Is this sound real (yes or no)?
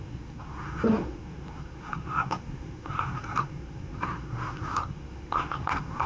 no